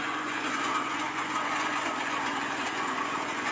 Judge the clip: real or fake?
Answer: fake